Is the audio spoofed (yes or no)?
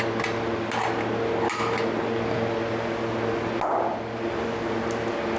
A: no